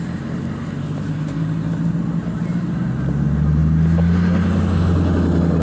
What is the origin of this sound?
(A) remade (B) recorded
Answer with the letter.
B